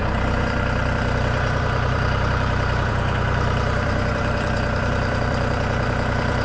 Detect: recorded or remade remade